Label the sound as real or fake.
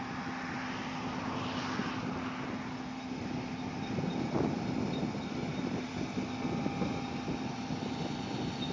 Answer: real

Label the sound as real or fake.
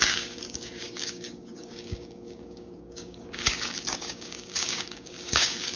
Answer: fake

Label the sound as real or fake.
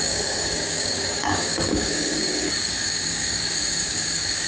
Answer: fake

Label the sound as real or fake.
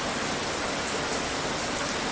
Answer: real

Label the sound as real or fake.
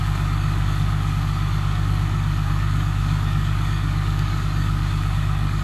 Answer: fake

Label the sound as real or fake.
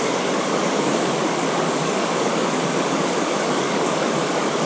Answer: fake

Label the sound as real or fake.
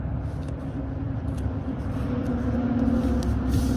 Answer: real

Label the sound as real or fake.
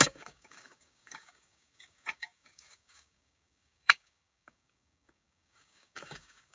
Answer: fake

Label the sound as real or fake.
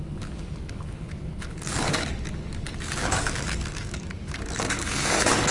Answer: fake